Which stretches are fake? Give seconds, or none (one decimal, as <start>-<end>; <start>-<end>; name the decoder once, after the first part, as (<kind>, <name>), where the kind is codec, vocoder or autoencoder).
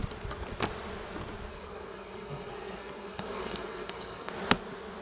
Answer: 1.5-4.3 (codec, SNAC)